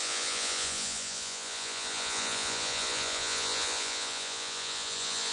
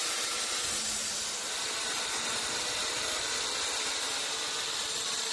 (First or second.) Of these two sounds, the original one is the second